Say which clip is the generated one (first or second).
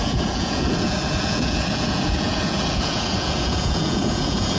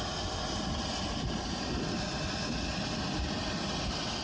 first